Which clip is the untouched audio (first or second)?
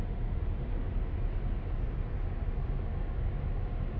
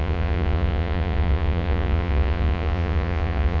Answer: first